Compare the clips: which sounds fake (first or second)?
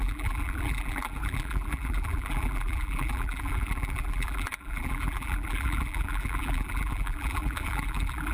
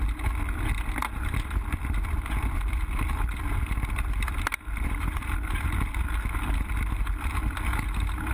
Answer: first